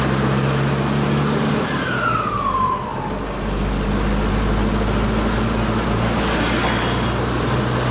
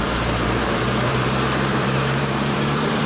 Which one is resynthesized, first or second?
second